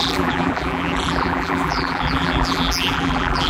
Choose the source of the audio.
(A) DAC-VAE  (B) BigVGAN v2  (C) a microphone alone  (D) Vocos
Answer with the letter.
B